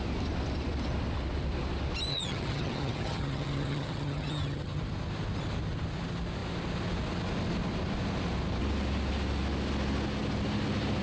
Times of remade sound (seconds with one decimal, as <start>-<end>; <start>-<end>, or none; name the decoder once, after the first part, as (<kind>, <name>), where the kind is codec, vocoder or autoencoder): 2.1-4.8 (vocoder, HiFi-GAN)